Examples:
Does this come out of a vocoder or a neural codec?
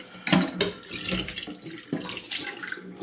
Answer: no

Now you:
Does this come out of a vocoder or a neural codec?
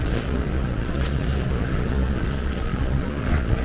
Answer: yes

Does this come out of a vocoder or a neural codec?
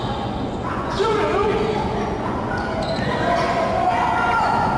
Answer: yes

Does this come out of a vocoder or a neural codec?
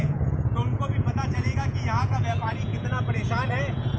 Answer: yes